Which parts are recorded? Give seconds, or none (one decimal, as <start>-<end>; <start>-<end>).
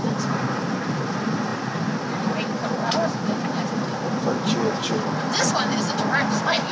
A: 0.0-6.7